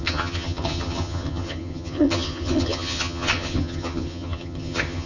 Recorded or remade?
remade